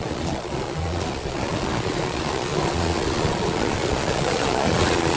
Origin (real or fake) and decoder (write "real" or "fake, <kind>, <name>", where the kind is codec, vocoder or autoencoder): fake, vocoder, Vocos